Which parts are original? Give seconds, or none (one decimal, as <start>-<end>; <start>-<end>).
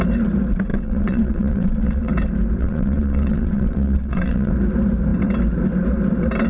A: 0.0-0.7; 2.1-2.6; 4.5-6.5